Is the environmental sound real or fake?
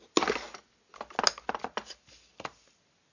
real